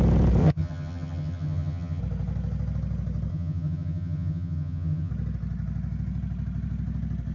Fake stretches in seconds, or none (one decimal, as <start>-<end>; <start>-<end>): 0.4-2.0; 3.3-5.1